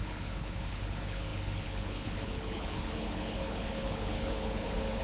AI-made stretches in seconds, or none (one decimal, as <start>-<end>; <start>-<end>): 0.0-5.0